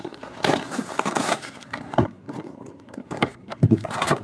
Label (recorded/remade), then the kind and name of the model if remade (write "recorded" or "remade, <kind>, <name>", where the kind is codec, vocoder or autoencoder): remade, codec, SNAC